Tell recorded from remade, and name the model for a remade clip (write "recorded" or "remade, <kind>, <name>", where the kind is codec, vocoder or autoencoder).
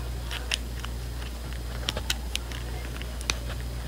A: recorded